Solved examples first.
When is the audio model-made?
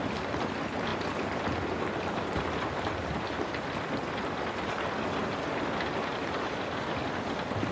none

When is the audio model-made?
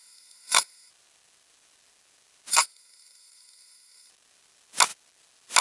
0.0-0.9 (codec, SNAC); 2.5-4.1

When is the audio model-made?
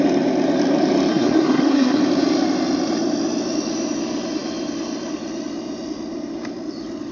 1.1-2.0 (codec, SNAC)